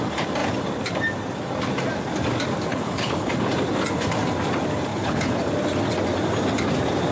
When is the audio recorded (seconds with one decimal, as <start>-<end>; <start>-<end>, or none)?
0.0-2.7; 3.3-4.9; 5.4-7.1